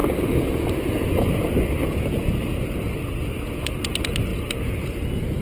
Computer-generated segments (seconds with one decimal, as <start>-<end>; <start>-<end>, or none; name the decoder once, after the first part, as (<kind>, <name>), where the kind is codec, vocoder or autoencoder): 0.0-3.1 (vocoder, BigVGAN v2); 4.3-5.4